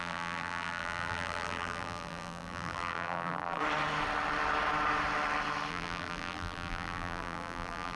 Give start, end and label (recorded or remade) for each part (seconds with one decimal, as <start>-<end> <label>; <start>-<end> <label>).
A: 0.0-3.6 remade; 3.6-5.7 recorded; 5.7-8.0 remade